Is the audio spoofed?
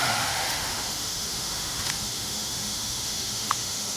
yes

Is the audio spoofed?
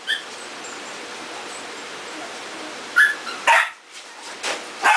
no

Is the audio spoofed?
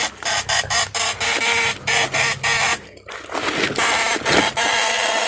no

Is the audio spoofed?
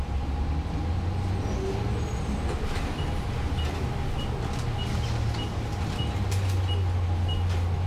no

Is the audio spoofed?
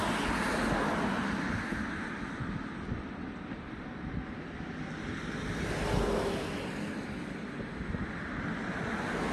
no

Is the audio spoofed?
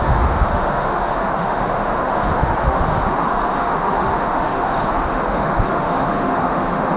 yes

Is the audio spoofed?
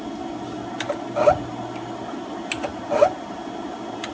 no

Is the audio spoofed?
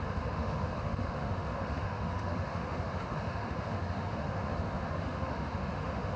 yes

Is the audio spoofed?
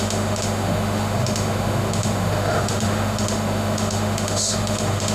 yes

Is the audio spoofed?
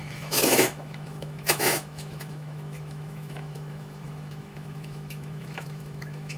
yes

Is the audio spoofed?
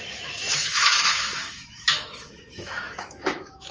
yes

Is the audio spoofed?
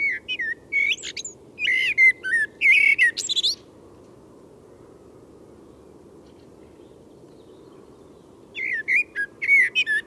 no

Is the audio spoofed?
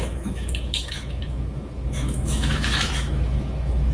yes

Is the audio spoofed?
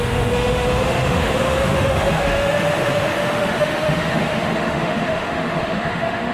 yes